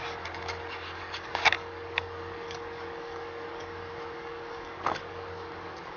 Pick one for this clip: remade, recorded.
remade